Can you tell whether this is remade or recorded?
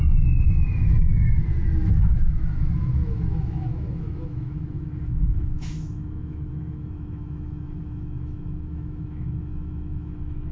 remade